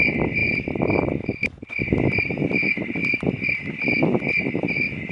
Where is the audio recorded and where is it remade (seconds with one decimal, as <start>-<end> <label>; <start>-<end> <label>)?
0.0-0.4 recorded; 0.4-1.7 remade; 1.7-3.0 recorded; 3.0-3.5 remade; 3.5-5.1 recorded